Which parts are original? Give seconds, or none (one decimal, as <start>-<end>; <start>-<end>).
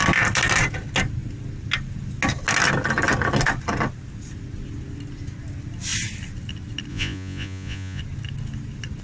0.0-6.9; 8.0-9.0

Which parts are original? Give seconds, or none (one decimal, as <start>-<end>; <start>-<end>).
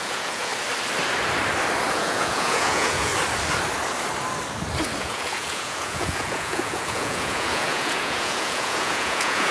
0.5-1.9; 3.1-5.0